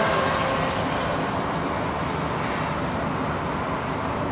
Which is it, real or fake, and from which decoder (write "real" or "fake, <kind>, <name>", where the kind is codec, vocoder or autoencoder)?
real